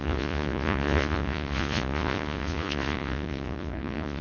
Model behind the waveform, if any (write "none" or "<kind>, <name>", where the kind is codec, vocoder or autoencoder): vocoder, Vocos